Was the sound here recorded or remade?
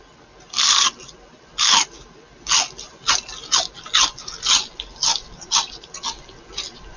recorded